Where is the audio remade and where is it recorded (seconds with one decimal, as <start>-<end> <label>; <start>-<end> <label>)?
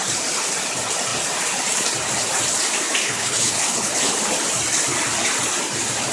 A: 0.0-3.0 recorded; 3.0-4.1 remade; 4.1-6.1 recorded